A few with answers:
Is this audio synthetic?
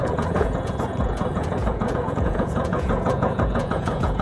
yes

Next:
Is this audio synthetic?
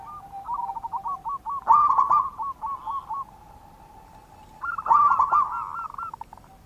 no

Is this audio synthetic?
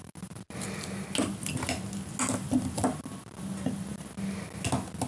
no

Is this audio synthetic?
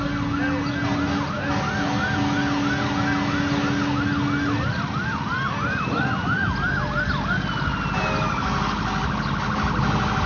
no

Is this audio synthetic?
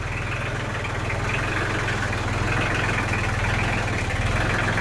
no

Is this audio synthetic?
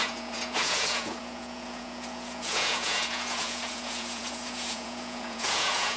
yes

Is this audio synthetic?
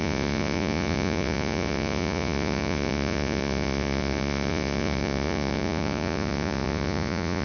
yes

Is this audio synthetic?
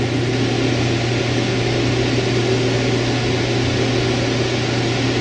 no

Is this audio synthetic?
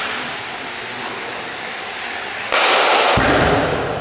no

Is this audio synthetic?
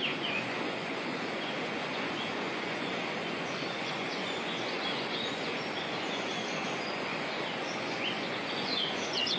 yes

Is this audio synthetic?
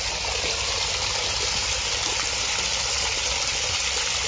no